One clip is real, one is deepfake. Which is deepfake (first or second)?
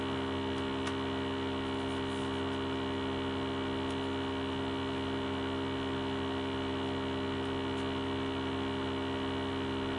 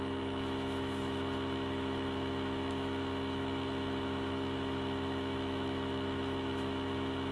second